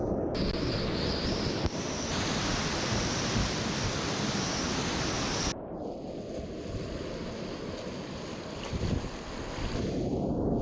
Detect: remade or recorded recorded